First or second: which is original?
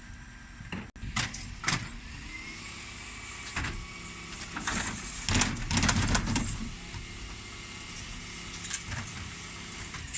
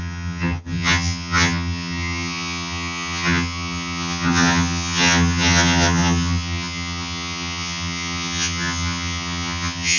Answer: first